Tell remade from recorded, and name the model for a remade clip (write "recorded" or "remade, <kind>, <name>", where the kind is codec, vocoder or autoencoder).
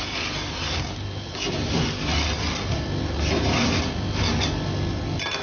recorded